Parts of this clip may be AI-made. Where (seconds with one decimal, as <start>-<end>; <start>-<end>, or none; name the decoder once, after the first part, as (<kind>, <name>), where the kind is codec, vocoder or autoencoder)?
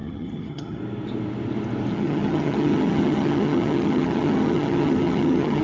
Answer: 0.0-0.8 (vocoder, HiFi-GAN); 1.9-5.6